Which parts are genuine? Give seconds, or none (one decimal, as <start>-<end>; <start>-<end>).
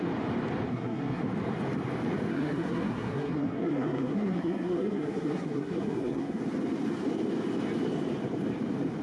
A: 0.0-0.7; 1.2-2.3; 6.4-9.0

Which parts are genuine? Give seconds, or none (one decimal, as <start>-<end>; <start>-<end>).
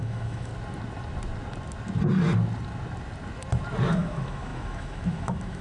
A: 0.5-3.9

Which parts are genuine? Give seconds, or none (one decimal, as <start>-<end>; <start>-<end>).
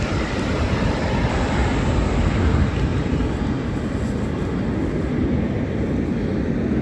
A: 0.0-6.8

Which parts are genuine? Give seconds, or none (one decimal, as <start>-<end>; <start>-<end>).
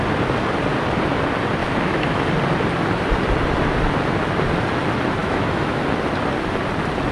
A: 0.0-1.6; 2.2-5.2; 5.8-7.1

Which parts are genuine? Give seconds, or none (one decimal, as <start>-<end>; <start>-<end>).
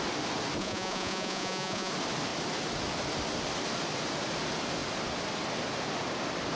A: 0.0-0.6; 1.9-6.6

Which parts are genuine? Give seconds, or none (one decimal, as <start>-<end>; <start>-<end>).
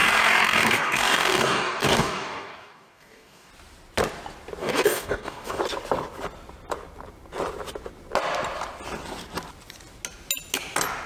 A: 3.5-4.6; 5.6-11.1